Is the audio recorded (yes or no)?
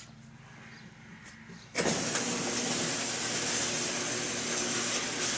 yes